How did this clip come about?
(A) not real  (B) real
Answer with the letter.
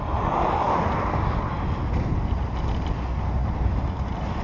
B